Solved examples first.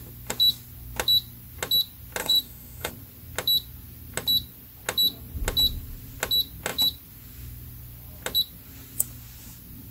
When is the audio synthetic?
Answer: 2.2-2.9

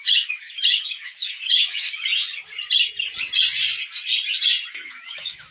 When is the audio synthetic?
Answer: 0.0-2.2; 4.7-5.5

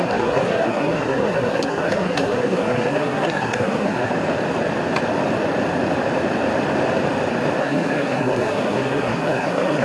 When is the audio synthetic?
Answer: 0.0-4.1; 7.6-9.8